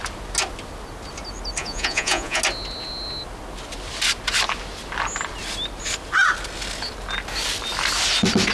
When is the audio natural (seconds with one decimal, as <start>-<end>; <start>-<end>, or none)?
0.0-1.6; 2.4-8.5